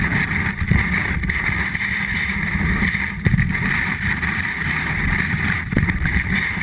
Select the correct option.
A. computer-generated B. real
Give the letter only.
B